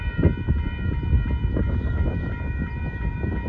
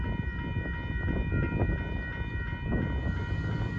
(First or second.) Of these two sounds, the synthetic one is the first